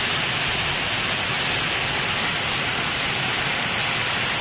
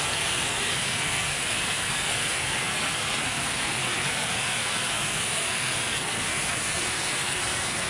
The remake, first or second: second